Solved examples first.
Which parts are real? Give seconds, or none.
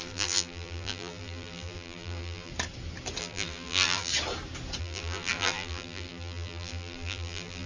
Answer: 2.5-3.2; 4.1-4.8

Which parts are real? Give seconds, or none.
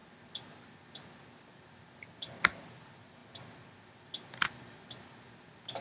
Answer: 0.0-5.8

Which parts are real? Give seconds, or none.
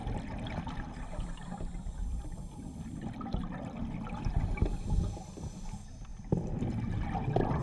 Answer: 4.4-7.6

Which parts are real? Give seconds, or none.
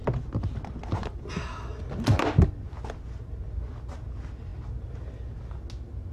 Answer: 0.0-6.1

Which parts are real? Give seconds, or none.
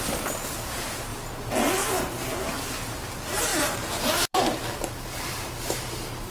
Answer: 0.0-3.5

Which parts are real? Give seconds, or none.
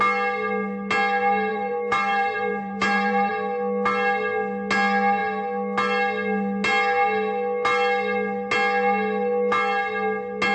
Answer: 0.0-1.5; 3.3-10.5